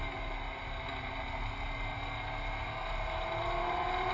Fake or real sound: real